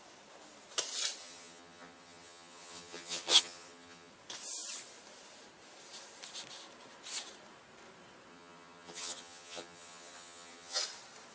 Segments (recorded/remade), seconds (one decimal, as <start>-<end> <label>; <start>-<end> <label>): 0.0-1.2 recorded; 1.2-4.1 remade; 4.1-8.3 recorded; 8.3-10.8 remade; 10.8-11.3 recorded